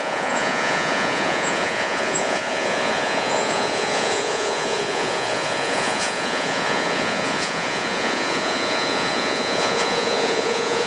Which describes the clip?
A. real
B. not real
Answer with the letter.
B